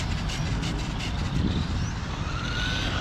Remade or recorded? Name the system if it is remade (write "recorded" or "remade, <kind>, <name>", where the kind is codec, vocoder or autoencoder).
recorded